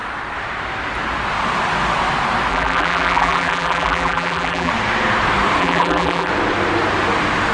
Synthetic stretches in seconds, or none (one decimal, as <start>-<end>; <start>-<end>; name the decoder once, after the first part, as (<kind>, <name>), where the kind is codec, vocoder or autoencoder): 2.5-4.7 (vocoder, BigVGAN v2); 5.6-6.3